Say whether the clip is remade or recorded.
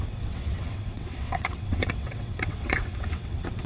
remade